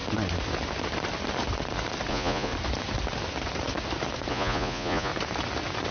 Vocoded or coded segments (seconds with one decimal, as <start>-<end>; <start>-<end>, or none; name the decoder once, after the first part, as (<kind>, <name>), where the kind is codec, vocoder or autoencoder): 2.1-2.5 (vocoder, Vocos); 4.3-5.1